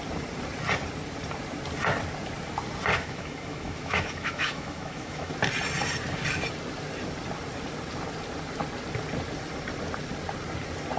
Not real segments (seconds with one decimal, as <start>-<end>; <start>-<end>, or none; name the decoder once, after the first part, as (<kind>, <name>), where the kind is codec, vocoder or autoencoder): 2.9-5.3 (autoencoder, DAC-VAE)

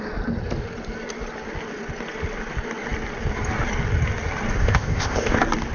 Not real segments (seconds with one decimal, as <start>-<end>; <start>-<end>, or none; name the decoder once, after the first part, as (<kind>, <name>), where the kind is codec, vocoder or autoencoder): 4.6-5.3 (codec, ZipCodec)

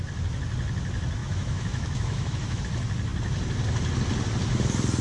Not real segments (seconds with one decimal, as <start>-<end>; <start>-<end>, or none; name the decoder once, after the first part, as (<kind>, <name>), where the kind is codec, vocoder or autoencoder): 1.2-2.6 (autoencoder, DAC-VAE)

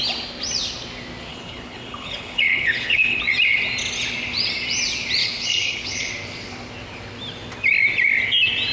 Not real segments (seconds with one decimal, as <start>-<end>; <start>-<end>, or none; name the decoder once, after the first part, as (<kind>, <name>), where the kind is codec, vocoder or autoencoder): 1.3-3.2 (codec, HILCodec); 5.2-6.1

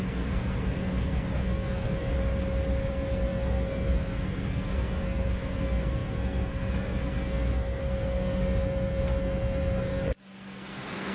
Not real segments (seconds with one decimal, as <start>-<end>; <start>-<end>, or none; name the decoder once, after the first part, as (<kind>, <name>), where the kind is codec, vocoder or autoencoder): 0.0-2.1 (codec, SNAC); 2.9-11.1

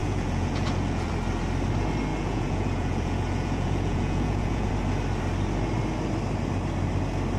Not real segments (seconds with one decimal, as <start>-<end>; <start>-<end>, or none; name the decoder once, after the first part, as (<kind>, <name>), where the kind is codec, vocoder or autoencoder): 0.0-1.1 (vocoder, Vocos); 2.1-4.7

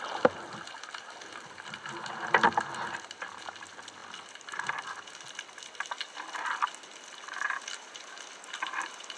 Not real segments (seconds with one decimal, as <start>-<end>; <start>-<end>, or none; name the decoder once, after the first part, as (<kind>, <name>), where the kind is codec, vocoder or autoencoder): none

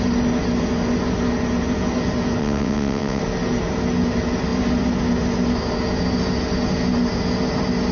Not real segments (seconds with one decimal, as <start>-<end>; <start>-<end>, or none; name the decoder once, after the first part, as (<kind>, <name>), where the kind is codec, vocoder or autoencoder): 2.4-3.2 (vocoder, WaveNeXt)